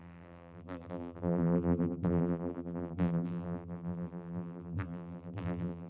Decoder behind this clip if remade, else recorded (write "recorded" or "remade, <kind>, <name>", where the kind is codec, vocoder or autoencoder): remade, vocoder, BigVGAN v2